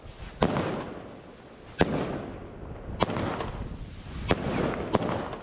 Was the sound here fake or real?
real